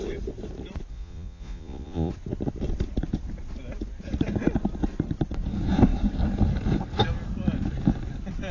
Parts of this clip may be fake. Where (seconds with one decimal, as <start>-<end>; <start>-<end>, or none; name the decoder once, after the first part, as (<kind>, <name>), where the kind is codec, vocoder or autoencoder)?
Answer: 0.9-2.1 (vocoder, Vocos)